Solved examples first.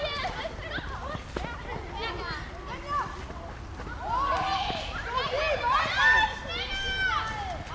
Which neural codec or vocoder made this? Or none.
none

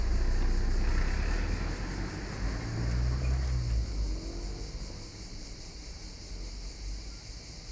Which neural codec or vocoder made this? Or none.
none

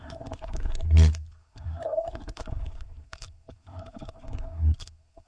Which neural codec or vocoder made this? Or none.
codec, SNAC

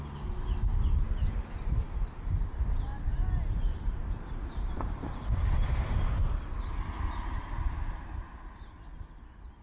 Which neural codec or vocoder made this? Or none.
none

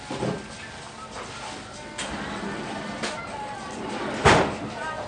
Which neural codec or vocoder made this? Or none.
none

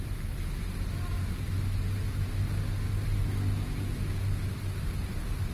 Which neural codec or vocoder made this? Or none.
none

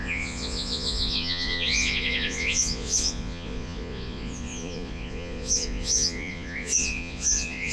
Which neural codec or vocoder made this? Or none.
vocoder, Vocos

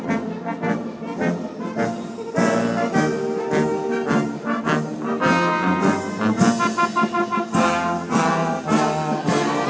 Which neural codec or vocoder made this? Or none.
none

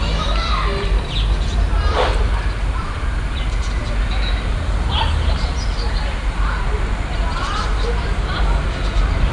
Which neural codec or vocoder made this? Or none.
none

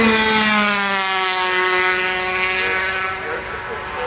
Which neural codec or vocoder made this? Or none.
none